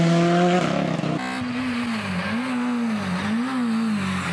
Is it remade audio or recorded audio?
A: recorded